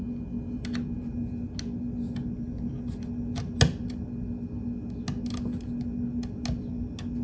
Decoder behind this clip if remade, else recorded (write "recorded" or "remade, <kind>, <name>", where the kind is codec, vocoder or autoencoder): recorded